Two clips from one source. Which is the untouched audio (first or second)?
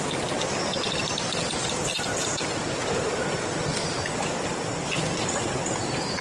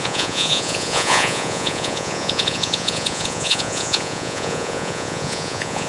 first